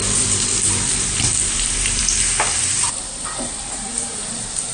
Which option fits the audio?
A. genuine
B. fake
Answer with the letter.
B